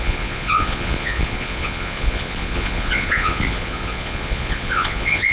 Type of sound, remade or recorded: remade